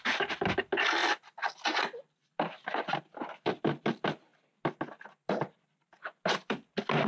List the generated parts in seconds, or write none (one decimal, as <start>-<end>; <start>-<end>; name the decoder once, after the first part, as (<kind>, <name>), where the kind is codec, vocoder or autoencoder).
none